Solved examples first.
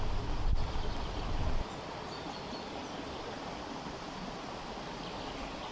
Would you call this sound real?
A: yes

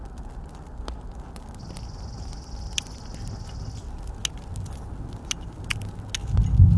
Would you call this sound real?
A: yes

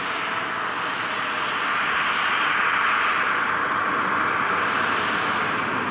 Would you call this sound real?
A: yes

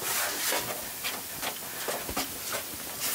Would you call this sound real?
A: yes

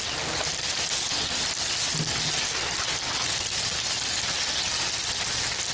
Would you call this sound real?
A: yes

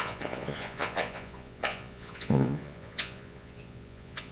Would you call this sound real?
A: no